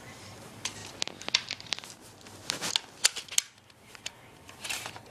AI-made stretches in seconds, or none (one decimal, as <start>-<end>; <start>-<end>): 0.0-0.8; 3.8-5.1